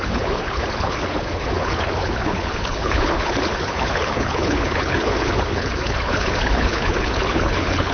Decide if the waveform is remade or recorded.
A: remade